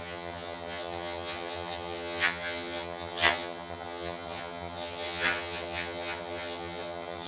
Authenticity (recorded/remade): remade